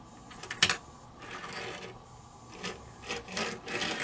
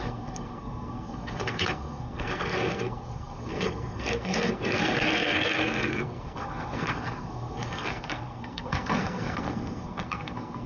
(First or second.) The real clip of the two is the first